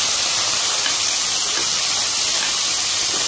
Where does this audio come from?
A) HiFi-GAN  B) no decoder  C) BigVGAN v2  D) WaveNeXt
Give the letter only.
B